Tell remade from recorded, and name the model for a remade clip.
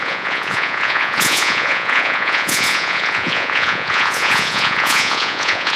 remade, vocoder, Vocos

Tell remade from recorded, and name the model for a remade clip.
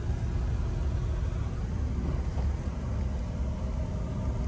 recorded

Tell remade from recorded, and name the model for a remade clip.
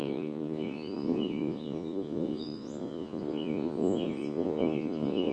remade, vocoder, Vocos